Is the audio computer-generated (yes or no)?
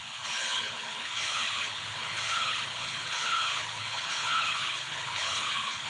yes